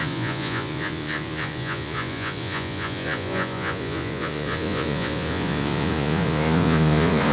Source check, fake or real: fake